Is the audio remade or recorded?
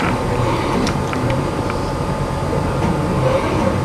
recorded